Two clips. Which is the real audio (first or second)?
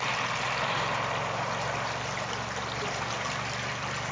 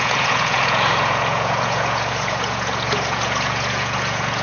first